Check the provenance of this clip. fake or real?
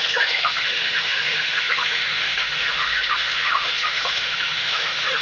fake